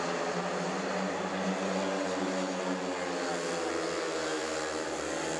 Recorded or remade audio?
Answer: recorded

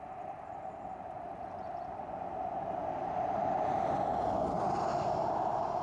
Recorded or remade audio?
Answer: remade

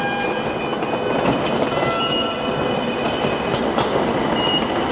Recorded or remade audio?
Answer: recorded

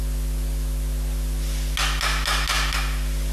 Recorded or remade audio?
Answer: recorded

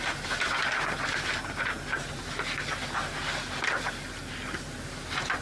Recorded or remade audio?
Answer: recorded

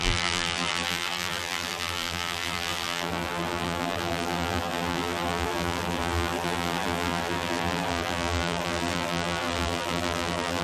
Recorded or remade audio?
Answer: remade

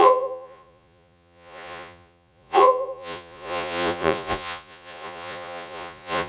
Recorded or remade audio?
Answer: remade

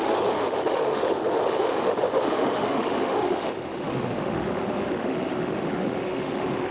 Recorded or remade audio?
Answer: remade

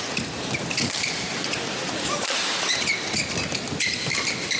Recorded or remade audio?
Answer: recorded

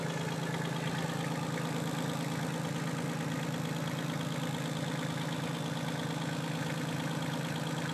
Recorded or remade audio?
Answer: recorded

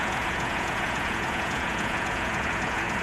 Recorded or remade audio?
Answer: remade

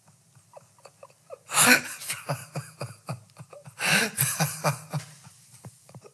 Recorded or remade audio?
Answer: recorded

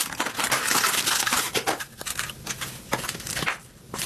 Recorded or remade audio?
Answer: recorded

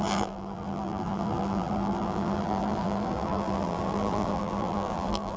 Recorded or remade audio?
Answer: remade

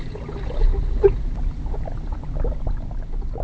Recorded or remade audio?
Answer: recorded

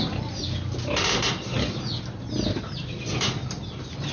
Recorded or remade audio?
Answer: recorded